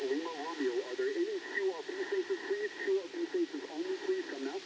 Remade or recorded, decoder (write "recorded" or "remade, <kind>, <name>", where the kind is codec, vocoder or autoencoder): recorded